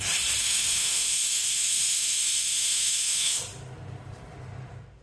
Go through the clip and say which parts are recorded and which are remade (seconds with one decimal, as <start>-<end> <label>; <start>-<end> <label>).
0.0-0.4 recorded; 0.4-3.4 remade; 3.4-5.0 recorded